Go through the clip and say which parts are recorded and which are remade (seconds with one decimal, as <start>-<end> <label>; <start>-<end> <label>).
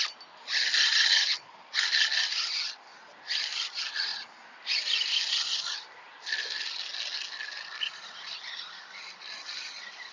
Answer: 0.0-10.1 recorded